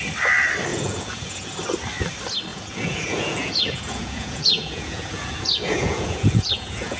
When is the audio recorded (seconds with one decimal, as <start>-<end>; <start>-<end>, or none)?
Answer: 0.0-0.7; 1.5-2.5